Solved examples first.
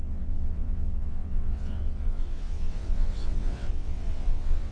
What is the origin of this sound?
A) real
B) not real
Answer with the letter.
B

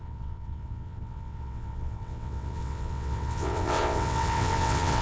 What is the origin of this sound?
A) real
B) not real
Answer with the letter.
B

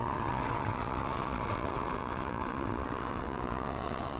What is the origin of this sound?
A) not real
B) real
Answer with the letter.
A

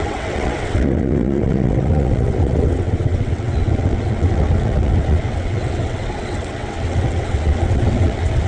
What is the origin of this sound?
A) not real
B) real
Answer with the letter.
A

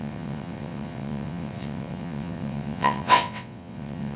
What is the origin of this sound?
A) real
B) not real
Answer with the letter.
B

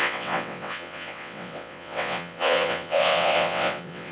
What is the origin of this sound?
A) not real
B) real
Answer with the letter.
A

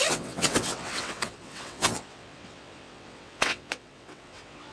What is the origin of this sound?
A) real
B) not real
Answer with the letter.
B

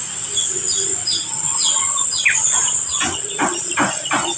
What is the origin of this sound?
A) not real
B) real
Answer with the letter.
B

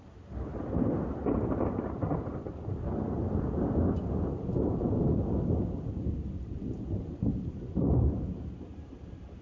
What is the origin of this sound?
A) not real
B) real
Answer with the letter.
B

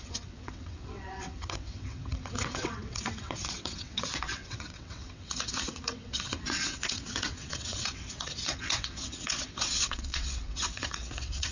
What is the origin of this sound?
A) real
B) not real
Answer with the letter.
B